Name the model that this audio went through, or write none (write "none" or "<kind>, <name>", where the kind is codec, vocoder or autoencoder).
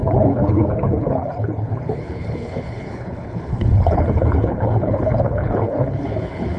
codec, HILCodec